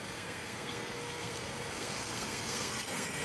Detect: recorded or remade remade